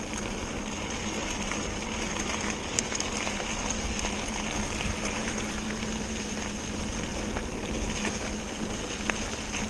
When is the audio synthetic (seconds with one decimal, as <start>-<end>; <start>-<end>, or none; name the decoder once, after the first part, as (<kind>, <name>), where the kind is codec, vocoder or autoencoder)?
none